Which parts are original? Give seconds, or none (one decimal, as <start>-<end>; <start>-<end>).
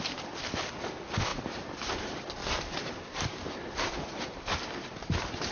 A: 0.0-1.3; 1.9-2.4